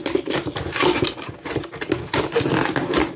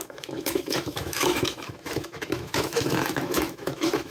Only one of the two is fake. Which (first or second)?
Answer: second